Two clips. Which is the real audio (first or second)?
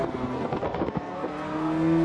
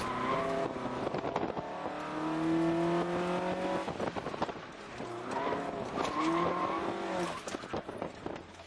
second